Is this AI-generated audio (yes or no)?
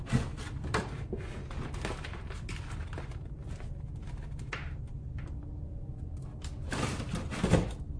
no